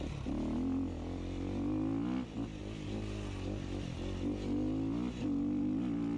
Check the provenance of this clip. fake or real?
real